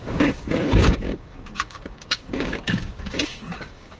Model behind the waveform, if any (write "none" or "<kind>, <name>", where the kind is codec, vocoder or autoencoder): codec, DAC